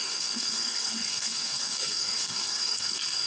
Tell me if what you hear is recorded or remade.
remade